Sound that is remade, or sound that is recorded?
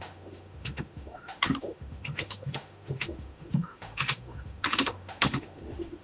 remade